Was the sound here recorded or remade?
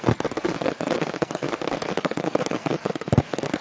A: remade